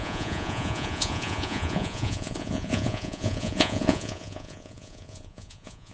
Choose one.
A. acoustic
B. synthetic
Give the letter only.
B